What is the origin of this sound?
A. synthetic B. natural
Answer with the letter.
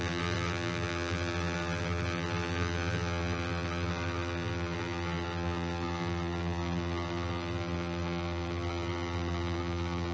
A